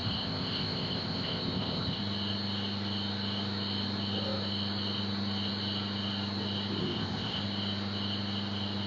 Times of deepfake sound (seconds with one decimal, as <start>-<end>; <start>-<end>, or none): 0.0-2.0; 6.8-7.4